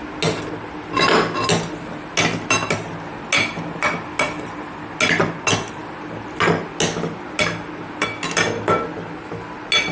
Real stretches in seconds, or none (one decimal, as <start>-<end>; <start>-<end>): 0.0-9.9

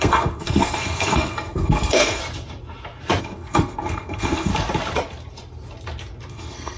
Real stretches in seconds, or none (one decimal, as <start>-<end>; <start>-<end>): 2.2-3.2; 4.5-6.3